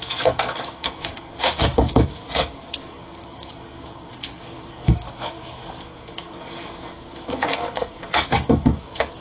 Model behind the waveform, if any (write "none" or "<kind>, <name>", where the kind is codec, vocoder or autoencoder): codec, SNAC